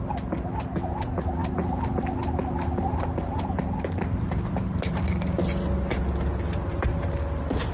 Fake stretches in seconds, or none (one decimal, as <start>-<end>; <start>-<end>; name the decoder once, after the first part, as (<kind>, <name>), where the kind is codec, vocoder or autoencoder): none